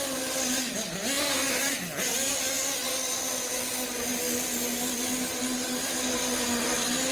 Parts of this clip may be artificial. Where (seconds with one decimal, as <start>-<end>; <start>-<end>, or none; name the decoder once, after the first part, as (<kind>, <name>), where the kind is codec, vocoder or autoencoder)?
none